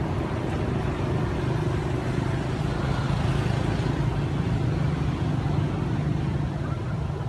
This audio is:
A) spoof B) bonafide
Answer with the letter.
B